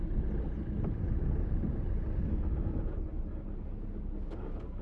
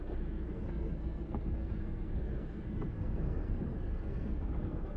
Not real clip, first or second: second